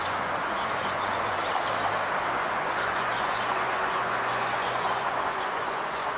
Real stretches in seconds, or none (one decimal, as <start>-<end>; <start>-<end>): 1.4-2.3